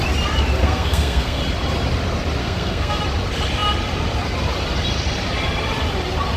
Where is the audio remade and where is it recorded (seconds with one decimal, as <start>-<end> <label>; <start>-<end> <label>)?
0.0-0.6 recorded; 0.6-1.4 remade; 1.4-2.4 recorded; 2.4-3.0 remade; 3.0-6.4 recorded

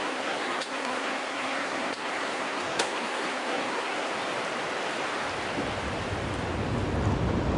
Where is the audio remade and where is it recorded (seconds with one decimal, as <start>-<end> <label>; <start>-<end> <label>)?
0.0-4.1 remade; 4.1-7.6 recorded

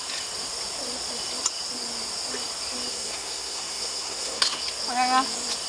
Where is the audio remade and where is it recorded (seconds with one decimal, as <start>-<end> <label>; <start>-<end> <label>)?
0.0-2.9 recorded; 2.9-4.6 remade; 4.6-5.7 recorded